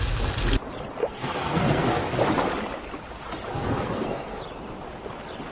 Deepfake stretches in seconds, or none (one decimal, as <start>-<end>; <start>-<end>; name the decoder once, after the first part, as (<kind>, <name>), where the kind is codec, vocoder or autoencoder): 1.0-2.0 (codec, SNAC); 3.5-4.4

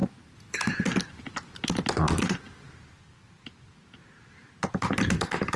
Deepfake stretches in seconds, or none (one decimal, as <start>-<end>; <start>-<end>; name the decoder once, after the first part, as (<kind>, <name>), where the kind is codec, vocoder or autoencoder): none

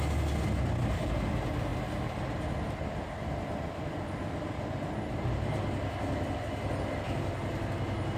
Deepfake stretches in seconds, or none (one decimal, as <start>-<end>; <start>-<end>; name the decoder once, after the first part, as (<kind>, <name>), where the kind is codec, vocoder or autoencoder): none

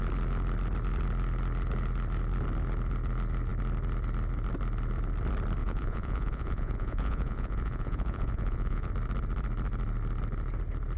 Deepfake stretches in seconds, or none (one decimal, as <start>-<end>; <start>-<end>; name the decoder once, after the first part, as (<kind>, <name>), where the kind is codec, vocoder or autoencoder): 5.6-8.9 (vocoder, Vocos)

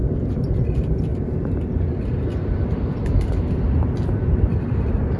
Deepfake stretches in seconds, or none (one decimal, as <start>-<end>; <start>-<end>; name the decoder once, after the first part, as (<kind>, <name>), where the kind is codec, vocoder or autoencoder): 0.0-0.6 (vocoder, BigVGAN v2); 4.5-5.2

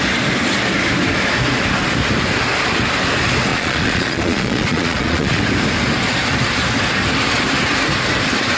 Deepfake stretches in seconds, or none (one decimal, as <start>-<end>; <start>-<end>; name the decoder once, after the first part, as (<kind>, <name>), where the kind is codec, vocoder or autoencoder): 3.5-5.4 (vocoder, Vocos)